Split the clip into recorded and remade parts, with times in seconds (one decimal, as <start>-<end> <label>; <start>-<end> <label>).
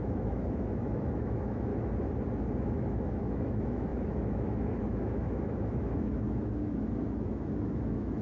0.0-1.7 remade; 1.7-2.6 recorded; 2.6-8.2 remade